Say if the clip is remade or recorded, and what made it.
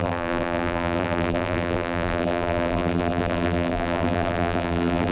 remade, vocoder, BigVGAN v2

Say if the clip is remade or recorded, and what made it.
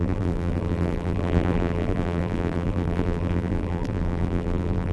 remade, vocoder, BigVGAN v2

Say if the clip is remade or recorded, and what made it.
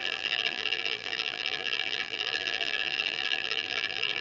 remade, vocoder, BigVGAN v2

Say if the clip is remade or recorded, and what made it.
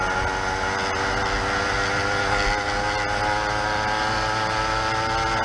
recorded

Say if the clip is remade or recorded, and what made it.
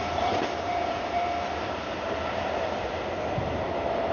remade, vocoder, BigVGAN v2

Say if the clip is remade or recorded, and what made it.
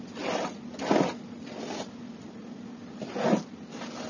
recorded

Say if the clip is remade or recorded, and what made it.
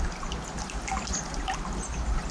recorded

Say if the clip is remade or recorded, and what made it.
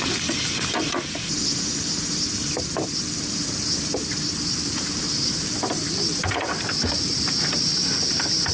remade, vocoder, BigVGAN v2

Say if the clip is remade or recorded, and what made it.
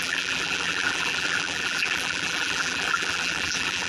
remade, vocoder, BigVGAN v2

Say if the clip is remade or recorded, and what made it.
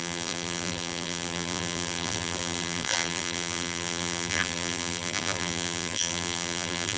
remade, vocoder, BigVGAN v2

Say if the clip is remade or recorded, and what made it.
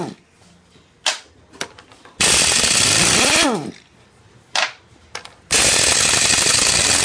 recorded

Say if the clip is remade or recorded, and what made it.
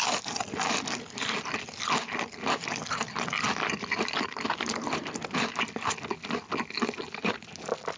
recorded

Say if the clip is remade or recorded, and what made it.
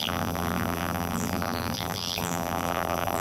remade, vocoder, BigVGAN v2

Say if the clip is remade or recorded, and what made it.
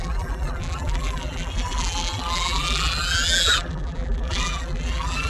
remade, vocoder, BigVGAN v2